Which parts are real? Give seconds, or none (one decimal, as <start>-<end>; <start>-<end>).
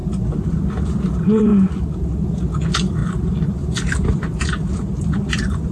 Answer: 0.0-0.5; 1.5-2.1